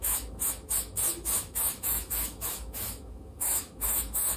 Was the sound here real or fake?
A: fake